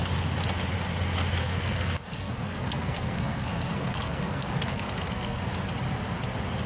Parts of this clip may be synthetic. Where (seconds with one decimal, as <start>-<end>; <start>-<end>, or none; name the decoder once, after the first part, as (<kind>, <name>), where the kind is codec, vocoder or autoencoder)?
1.4-5.4 (codec, SNAC)

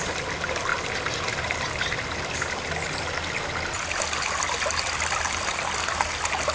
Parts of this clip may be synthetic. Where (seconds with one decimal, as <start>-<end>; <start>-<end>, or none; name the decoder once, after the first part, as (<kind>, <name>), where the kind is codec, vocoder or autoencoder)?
none

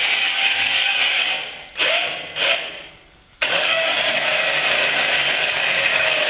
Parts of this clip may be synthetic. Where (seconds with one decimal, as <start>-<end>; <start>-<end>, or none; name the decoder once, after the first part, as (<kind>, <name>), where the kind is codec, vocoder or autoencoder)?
0.0-1.3 (codec, DAC); 2.9-4.5; 5.3-6.3